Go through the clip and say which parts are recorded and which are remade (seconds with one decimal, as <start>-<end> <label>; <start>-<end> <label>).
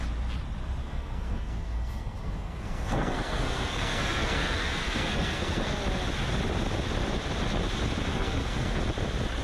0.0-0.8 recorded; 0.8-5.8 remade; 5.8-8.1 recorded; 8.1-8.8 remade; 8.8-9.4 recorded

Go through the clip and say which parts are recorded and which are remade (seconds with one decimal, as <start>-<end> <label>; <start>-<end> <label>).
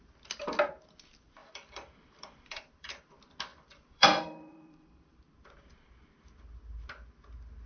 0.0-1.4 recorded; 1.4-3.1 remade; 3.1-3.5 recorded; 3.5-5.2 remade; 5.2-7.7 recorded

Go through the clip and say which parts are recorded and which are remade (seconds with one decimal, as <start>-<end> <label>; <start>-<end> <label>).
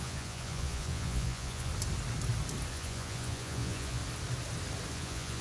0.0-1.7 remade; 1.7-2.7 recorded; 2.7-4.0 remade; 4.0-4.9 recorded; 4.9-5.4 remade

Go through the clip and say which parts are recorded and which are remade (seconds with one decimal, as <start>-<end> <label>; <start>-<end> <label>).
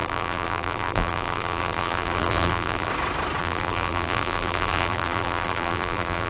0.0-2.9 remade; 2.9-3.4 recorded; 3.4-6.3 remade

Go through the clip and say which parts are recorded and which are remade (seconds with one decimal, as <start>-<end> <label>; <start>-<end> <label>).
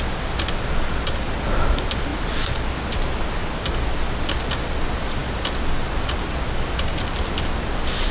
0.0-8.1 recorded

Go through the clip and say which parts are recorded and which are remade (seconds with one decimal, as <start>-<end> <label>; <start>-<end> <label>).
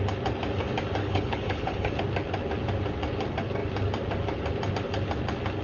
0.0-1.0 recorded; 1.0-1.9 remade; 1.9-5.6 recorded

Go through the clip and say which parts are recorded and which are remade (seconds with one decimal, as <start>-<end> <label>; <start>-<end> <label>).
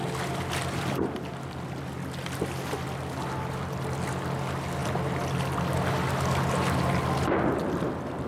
0.0-8.3 recorded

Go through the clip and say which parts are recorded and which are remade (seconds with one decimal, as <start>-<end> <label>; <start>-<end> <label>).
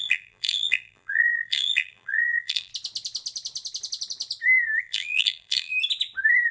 0.0-2.7 remade; 2.7-4.8 recorded; 4.8-5.7 remade; 5.7-6.5 recorded